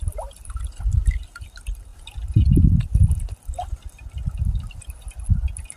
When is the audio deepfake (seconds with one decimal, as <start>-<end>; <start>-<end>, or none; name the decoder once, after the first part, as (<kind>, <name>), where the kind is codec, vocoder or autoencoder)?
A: none

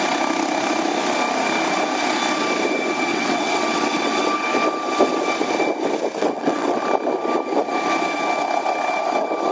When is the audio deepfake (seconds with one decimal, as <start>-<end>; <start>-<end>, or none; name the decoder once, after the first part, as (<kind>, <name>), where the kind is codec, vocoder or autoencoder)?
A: 3.1-4.3 (vocoder, WaveNeXt); 6.2-6.8

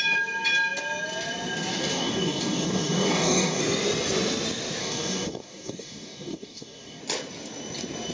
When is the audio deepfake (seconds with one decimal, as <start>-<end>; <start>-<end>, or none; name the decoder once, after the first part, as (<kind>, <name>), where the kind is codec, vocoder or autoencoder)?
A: 1.8-3.6 (codec, DAC); 4.8-7.0

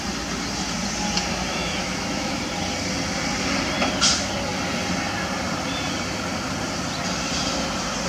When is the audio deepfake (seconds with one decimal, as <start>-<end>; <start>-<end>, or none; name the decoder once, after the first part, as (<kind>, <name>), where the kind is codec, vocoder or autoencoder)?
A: 1.5-2.4 (autoencoder, DAC-VAE)

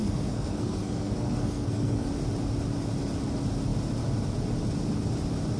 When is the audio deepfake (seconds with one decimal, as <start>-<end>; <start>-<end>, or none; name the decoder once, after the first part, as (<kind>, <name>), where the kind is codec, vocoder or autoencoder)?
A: 0.0-2.1 (codec, SNAC)

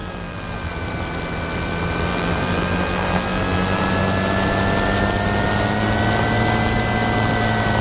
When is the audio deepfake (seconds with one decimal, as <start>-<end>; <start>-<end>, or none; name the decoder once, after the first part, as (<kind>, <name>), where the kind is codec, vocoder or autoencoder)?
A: 0.0-0.7 (vocoder, BigVGAN v2); 2.1-3.8